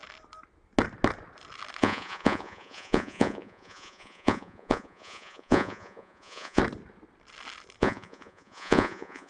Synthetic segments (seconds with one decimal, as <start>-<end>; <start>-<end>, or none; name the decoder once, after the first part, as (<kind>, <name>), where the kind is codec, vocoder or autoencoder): 1.8-6.6 (vocoder, Vocos); 7.8-9.3